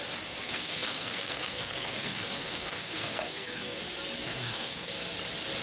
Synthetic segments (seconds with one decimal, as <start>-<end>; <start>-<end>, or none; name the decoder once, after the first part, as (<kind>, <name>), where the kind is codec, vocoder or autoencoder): 0.4-3.8 (codec, SNAC); 4.2-4.9